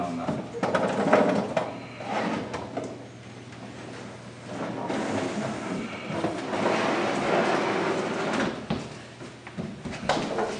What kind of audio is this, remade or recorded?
recorded